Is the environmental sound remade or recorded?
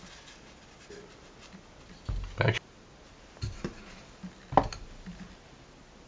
recorded